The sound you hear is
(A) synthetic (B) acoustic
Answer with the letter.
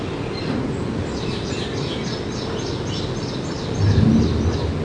B